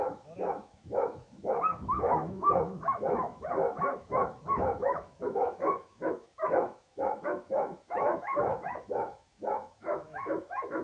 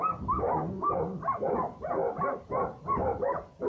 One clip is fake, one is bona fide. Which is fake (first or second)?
first